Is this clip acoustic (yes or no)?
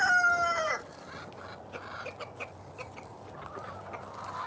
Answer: yes